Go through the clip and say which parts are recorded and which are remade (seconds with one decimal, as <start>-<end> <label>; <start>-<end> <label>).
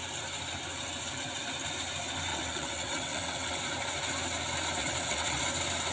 0.0-2.3 recorded; 2.3-3.6 remade; 3.6-4.8 recorded; 4.8-5.4 remade; 5.4-5.9 recorded